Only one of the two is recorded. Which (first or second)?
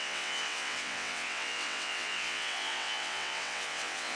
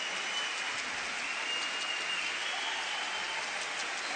second